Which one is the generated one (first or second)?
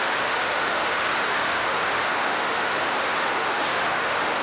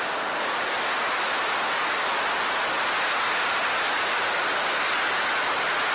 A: first